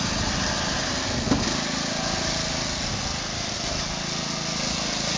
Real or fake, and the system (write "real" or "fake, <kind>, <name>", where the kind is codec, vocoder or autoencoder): real